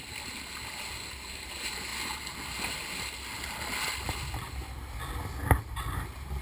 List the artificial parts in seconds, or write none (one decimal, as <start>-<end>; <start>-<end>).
none